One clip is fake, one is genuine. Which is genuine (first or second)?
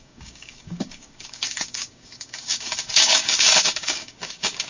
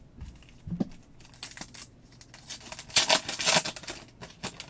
second